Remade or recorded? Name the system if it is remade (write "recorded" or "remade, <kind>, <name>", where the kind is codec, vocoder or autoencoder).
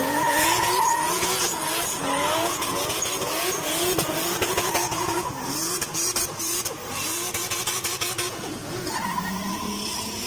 remade, vocoder, Vocos